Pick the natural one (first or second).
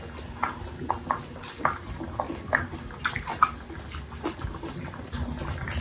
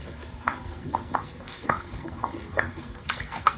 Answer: first